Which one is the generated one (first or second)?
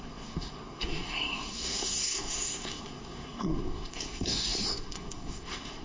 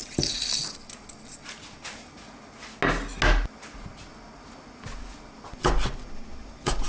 first